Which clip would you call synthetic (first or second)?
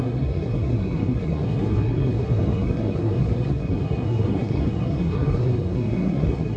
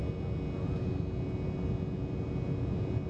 first